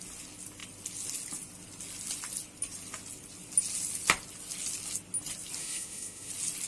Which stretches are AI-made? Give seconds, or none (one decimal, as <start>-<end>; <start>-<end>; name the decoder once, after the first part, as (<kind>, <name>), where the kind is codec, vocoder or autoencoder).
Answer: 5.6-6.3 (autoencoder, DAC-VAE)